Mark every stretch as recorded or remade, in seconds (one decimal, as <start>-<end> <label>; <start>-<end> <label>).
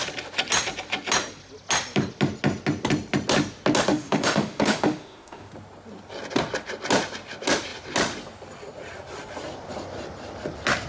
0.0-3.9 recorded; 3.9-5.5 remade; 5.5-10.9 recorded